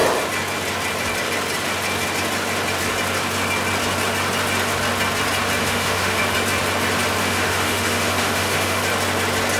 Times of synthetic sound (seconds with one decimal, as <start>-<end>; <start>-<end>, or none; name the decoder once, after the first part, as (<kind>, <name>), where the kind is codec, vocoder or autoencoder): 5.6-6.2 (autoencoder, DAC-VAE); 7.2-8.8